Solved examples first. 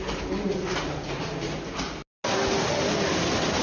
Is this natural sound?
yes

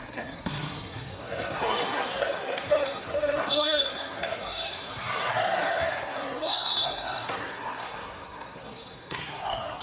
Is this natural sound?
no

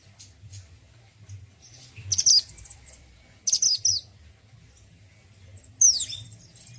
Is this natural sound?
yes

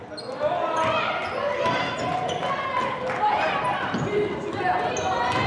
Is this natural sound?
yes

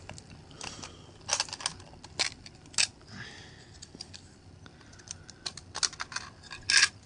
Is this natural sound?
yes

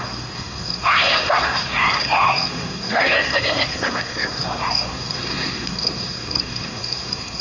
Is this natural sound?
no